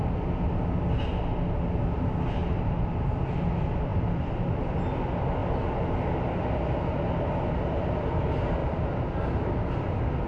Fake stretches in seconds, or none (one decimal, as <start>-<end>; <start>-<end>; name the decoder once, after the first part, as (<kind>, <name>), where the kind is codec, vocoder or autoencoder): 2.4-3.0 (vocoder, BigVGAN v2); 8.6-9.9